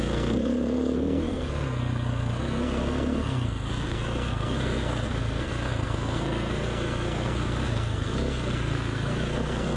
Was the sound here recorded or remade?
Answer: remade